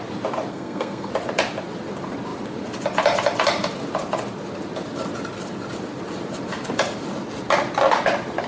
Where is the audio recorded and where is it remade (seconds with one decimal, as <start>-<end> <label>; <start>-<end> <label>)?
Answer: 0.0-0.5 recorded; 0.5-1.1 remade; 1.1-8.5 recorded